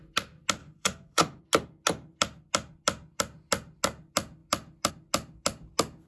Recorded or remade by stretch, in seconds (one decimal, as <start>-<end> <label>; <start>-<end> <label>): 0.0-0.6 recorded; 0.6-1.4 remade; 1.4-6.1 recorded